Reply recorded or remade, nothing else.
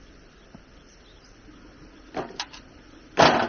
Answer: recorded